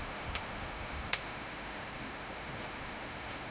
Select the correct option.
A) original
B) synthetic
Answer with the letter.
B